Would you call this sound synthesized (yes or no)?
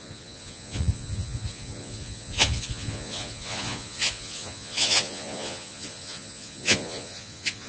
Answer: yes